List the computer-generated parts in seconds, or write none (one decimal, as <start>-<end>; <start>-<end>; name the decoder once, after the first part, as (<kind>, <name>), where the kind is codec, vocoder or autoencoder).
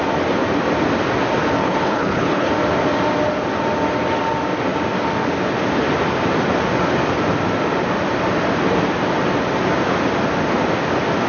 1.6-2.5 (codec, HILCodec)